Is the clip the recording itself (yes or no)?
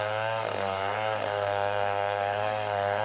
no